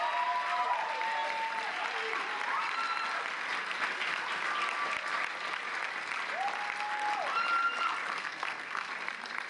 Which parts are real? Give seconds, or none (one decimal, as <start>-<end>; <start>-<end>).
0.0-8.1; 8.9-9.5